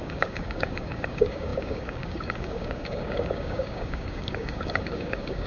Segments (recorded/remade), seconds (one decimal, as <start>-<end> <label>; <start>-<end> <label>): 0.0-5.5 remade

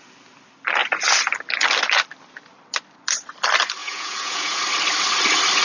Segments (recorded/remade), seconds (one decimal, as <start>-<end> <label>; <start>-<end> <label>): 0.0-3.8 recorded; 3.8-4.6 remade; 4.6-5.6 recorded

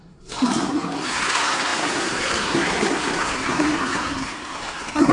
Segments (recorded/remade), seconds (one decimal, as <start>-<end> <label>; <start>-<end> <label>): 0.0-5.1 remade

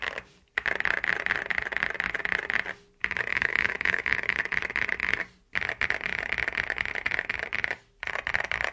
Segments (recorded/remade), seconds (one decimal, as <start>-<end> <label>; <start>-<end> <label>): 0.0-3.3 recorded; 3.3-4.4 remade; 4.4-8.7 recorded